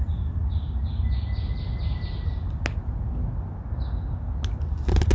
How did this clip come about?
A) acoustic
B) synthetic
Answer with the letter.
A